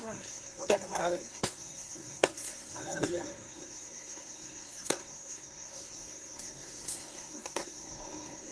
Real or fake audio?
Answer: fake